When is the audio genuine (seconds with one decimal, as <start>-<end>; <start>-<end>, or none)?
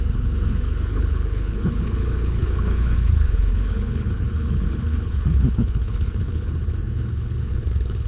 none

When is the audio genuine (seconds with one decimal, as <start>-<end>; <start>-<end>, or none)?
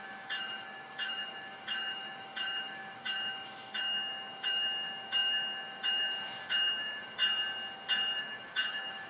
7.2-8.2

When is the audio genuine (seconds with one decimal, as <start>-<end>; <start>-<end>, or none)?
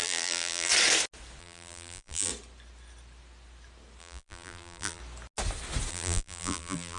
0.7-1.4; 2.3-4.0; 5.0-5.9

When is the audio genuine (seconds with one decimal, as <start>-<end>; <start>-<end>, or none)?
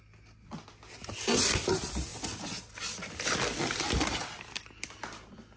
0.0-5.6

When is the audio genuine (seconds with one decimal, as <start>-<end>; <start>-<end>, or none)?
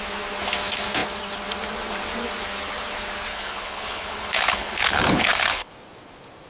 0.0-3.3; 5.7-6.5